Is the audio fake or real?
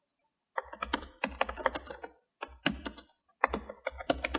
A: real